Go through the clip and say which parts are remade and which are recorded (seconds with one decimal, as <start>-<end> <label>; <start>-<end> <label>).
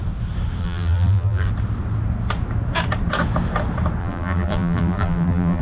0.0-0.6 recorded; 0.6-1.5 remade; 1.5-4.0 recorded; 4.0-5.6 remade